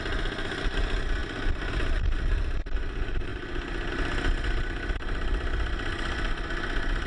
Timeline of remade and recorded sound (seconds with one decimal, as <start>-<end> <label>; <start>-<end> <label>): 0.0-7.1 recorded

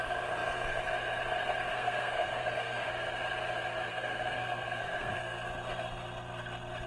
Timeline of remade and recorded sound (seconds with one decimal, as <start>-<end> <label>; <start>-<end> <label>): 0.0-1.7 recorded; 1.7-2.9 remade; 2.9-3.9 recorded; 3.9-5.1 remade; 5.1-6.9 recorded

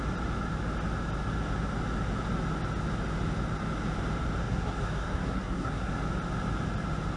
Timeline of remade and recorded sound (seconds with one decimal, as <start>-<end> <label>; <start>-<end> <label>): 0.0-4.4 recorded; 4.4-5.9 remade; 5.9-7.2 recorded

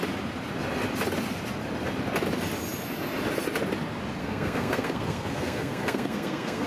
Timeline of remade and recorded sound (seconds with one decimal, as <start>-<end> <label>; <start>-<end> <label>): 0.0-4.2 recorded; 4.2-6.7 remade

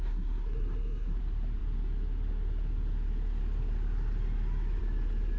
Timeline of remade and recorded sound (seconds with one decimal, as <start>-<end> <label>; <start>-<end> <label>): 0.0-1.2 remade; 1.2-5.4 recorded

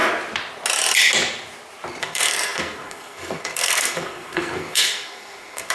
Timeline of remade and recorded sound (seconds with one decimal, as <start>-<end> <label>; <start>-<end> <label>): 0.0-2.0 recorded; 2.0-5.7 remade